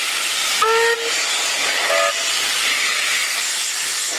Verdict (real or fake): real